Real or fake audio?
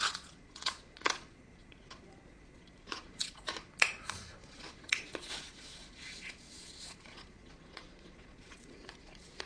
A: fake